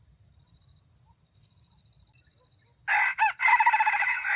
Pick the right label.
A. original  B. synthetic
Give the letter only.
A